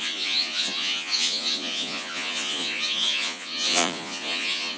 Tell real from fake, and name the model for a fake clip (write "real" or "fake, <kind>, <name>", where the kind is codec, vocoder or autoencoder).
fake, vocoder, Vocos